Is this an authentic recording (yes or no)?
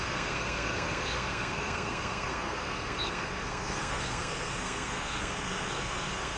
no